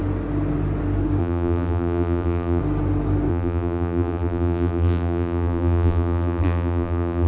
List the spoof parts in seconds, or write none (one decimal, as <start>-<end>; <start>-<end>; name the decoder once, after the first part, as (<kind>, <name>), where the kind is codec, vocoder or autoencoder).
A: 1.2-2.6 (vocoder, BigVGAN v2); 3.3-7.3